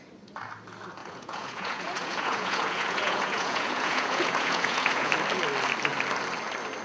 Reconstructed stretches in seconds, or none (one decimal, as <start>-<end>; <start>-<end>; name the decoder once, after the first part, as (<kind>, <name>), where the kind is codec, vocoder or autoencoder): 1.0-5.1 (vocoder, Vocos)

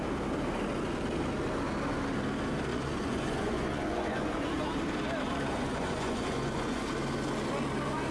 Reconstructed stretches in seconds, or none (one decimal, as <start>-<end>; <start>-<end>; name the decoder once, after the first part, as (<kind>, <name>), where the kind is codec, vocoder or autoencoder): 2.7-4.5 (vocoder, Vocos); 5.5-6.8

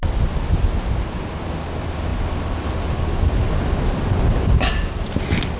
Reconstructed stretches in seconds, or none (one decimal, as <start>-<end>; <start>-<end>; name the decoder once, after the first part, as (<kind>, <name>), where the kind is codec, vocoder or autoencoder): none

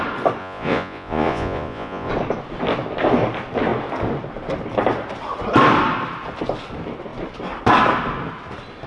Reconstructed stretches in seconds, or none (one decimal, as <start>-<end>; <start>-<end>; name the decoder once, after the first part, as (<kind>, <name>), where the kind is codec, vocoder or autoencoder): 0.4-2.1 (vocoder, Vocos)

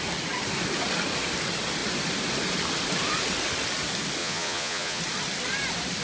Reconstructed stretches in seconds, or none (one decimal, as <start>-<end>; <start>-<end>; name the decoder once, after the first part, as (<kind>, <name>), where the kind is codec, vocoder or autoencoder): 4.2-5.0 (vocoder, Vocos)

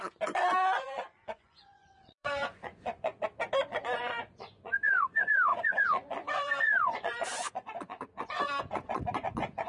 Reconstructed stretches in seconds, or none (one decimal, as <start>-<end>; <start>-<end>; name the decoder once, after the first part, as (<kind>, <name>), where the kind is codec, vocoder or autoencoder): 0.0-3.1 (vocoder, Vocos); 3.6-9.7

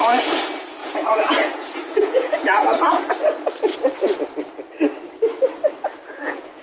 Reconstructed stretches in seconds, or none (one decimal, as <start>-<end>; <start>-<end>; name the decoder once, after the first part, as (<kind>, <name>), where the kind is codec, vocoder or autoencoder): 0.8-3.0 (vocoder, Vocos); 6.1-6.6

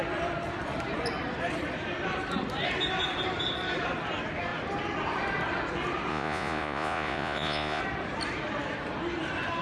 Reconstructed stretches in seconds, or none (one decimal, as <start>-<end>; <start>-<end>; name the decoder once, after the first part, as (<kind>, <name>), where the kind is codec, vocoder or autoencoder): 6.1-7.8 (vocoder, Vocos)